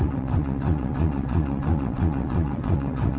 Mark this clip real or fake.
fake